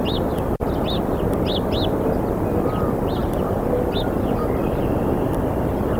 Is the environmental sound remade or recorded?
recorded